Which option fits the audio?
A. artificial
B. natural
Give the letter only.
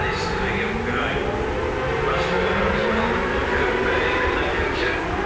B